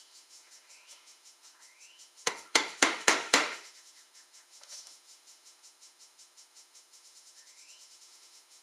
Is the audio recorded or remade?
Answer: remade